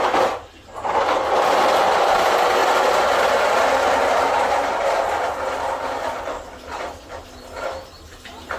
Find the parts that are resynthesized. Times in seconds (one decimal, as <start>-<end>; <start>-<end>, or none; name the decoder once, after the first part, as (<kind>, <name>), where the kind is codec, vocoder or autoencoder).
none

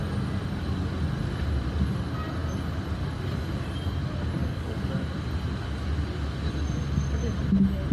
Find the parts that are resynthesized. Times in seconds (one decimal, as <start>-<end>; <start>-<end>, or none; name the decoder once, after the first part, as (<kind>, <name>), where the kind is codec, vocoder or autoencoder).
4.4-4.9 (codec, DAC)

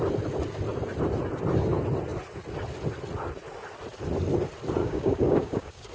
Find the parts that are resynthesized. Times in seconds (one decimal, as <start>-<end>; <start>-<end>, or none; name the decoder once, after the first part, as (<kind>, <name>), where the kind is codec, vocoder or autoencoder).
4.8-5.9 (codec, DAC)

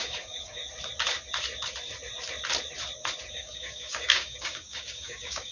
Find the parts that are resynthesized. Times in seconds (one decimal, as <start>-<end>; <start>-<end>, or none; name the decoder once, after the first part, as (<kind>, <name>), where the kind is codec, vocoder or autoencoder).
0.0-0.6 (codec, DAC); 3.3-5.5

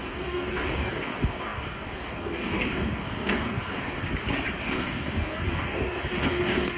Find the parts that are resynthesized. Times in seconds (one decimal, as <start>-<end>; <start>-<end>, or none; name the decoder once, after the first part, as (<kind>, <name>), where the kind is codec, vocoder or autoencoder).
0.0-4.0 (codec, DAC); 4.6-6.8

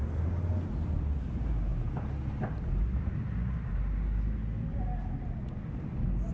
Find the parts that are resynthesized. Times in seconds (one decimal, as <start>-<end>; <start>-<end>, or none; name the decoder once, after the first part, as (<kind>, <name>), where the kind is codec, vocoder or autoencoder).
none

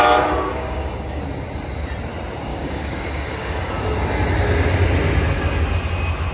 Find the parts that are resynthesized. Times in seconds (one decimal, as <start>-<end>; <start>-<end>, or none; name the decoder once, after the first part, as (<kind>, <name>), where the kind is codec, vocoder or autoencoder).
0.5-1.2 (codec, DAC); 2.5-3.8

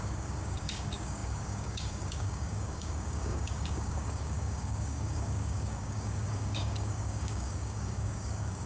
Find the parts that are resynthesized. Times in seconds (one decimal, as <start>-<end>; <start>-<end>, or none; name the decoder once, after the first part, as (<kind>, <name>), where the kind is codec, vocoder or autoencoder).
0.0-8.7 (codec, DAC)